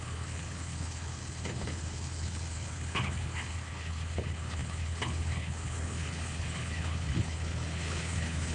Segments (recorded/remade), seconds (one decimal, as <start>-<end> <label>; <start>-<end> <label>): 0.0-8.5 remade